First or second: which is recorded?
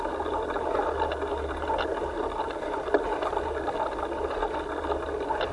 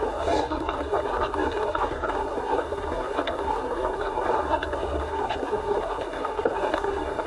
first